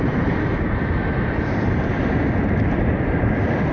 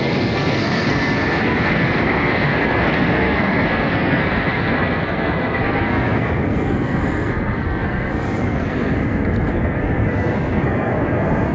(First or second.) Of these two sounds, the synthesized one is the second